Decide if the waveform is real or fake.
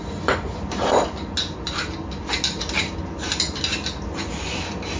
real